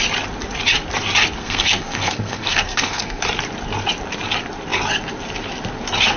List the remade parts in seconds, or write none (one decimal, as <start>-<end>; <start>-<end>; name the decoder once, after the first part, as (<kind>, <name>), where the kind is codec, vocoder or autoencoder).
1.4-3.2 (codec, SNAC)